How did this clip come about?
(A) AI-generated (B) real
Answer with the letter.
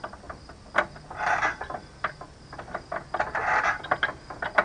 B